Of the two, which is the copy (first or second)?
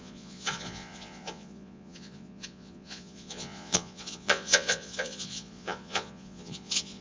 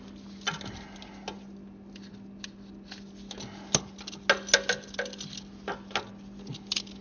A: first